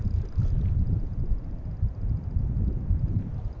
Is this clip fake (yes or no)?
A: no